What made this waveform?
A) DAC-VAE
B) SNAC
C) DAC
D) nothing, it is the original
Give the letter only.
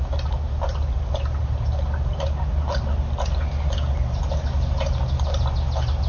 D